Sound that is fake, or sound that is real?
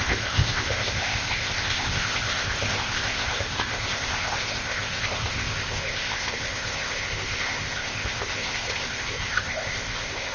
fake